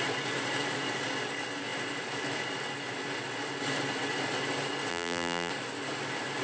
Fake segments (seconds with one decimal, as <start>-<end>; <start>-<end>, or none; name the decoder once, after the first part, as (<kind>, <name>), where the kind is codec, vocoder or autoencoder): 4.9-5.5 (vocoder, BigVGAN v2)